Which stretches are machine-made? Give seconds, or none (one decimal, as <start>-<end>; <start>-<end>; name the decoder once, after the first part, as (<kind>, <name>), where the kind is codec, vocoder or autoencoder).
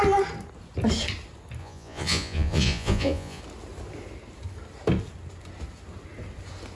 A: 1.6-3.4 (vocoder, Vocos)